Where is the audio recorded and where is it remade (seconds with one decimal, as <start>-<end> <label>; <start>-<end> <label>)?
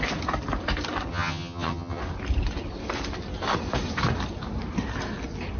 0.0-1.1 recorded; 1.1-2.0 remade; 2.0-5.6 recorded